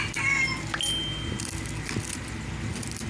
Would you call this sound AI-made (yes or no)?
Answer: no